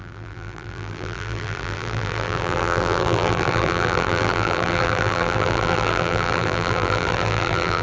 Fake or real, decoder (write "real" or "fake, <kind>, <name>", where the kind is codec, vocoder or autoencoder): fake, vocoder, BigVGAN v2